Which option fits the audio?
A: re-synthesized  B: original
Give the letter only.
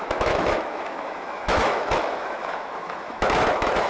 A